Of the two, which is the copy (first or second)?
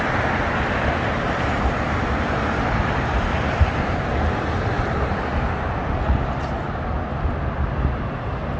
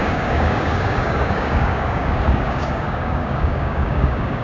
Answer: second